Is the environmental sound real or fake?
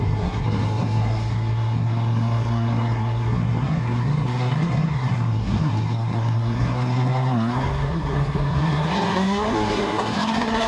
fake